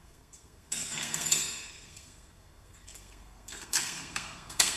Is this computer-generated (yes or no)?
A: yes